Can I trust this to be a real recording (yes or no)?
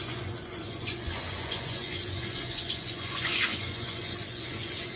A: no